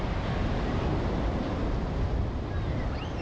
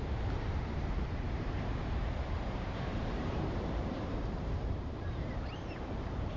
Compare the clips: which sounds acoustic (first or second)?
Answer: first